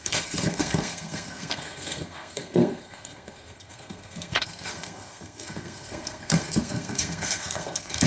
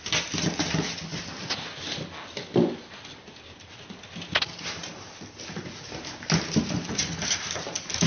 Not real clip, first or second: first